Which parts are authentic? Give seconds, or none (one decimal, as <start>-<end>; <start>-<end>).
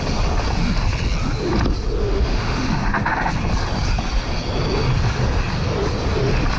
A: 0.0-2.0; 3.3-6.6